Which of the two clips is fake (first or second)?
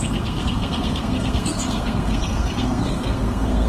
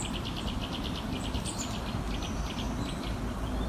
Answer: first